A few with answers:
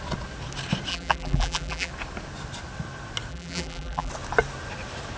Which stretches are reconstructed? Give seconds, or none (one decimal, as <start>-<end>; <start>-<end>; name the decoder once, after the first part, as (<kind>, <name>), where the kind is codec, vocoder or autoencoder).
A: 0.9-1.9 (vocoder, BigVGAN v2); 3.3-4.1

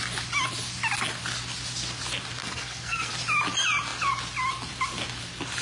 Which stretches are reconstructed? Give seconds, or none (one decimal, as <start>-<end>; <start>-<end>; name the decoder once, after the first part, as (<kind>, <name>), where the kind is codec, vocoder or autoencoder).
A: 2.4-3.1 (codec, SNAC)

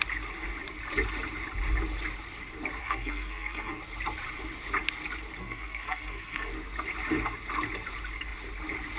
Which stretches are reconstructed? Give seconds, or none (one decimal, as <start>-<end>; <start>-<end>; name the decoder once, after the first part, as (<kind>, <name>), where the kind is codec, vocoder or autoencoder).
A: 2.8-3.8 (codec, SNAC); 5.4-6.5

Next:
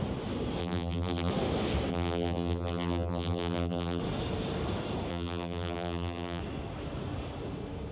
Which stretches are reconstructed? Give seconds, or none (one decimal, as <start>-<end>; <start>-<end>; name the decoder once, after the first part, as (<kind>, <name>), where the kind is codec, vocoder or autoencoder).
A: 0.6-1.3 (vocoder, BigVGAN v2); 1.9-4.0; 5.1-6.4

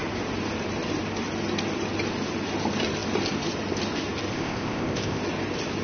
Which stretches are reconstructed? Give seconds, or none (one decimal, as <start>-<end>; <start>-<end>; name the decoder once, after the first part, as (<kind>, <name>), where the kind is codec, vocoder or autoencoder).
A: 4.3-5.2 (codec, ZipCodec)

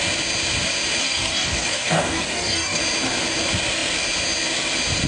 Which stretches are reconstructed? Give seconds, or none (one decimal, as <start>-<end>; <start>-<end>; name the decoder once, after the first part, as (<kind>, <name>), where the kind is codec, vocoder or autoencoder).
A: 1.0-2.8 (codec, DAC)